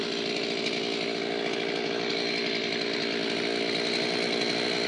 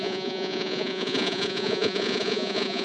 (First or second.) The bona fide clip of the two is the first